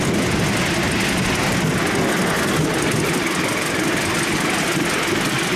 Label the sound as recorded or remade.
recorded